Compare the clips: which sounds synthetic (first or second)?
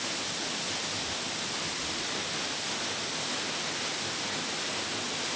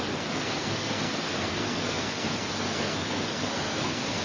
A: second